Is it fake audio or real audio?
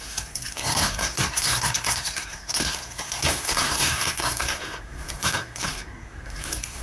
fake